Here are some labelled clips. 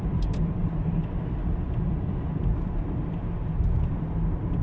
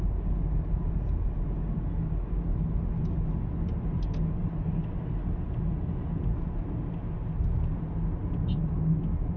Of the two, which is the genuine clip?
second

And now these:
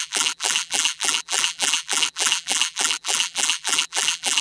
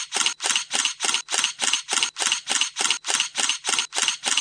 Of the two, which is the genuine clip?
second